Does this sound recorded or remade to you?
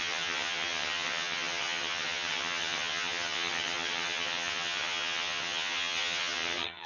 remade